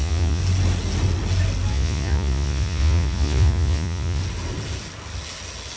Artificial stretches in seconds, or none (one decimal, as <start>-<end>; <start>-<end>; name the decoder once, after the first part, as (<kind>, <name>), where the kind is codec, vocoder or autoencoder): 0.0-0.4 (vocoder, Vocos); 1.7-4.2